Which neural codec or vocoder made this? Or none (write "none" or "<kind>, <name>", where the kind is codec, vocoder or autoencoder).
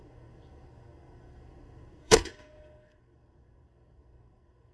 codec, SNAC